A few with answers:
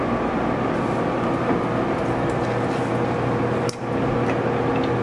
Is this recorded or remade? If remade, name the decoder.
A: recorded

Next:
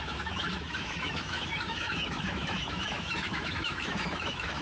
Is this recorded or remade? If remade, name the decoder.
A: remade, autoencoder, DAC-VAE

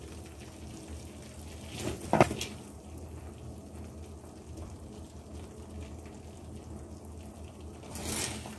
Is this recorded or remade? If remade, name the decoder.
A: recorded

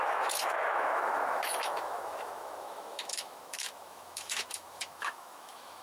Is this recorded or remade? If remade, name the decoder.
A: remade, autoencoder, DAC-VAE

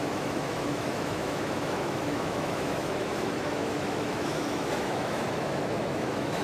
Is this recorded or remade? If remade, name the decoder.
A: remade, autoencoder, DAC-VAE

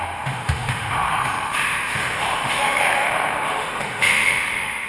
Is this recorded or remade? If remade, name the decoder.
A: remade, autoencoder, DAC-VAE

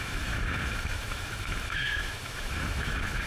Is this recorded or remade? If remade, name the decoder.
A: remade, autoencoder, DAC-VAE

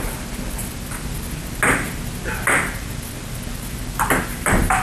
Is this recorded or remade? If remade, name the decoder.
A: recorded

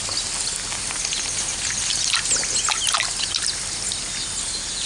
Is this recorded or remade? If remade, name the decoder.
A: recorded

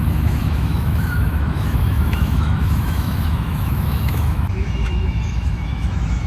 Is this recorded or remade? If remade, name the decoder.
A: remade, autoencoder, DAC-VAE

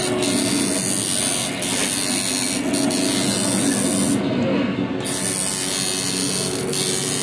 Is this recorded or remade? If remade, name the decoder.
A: recorded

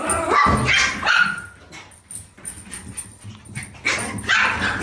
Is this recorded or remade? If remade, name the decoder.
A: recorded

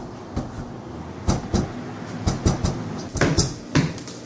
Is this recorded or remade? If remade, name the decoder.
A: recorded